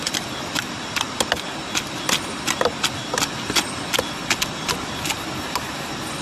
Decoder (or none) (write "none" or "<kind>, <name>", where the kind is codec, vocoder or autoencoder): none